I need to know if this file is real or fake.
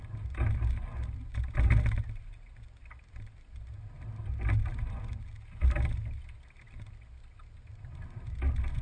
real